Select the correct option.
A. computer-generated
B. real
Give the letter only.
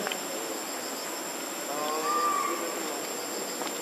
B